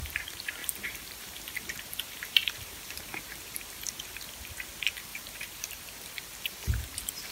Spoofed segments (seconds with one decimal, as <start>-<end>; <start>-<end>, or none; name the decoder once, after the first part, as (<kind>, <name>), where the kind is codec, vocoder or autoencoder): 0.6-4.2 (vocoder, BigVGAN v2); 5.1-5.8